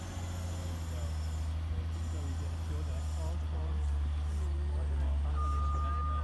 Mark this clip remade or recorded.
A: recorded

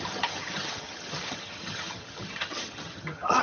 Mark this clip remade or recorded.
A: remade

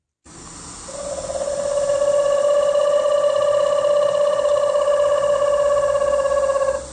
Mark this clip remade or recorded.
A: recorded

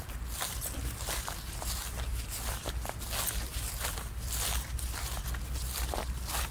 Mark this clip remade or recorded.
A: recorded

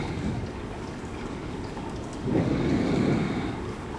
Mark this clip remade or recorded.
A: remade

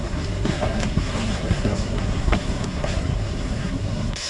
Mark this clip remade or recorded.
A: remade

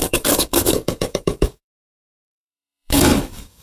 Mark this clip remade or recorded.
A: remade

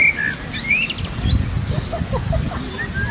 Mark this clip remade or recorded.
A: recorded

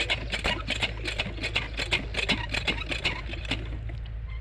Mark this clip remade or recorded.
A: recorded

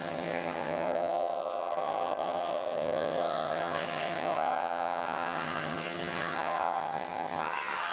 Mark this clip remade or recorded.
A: remade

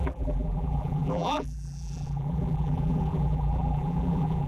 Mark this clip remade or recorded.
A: remade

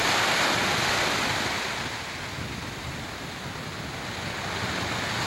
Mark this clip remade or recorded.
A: recorded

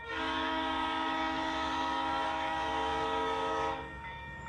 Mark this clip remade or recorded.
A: remade